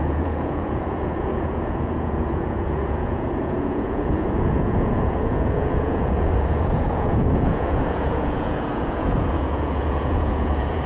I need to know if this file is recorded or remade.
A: remade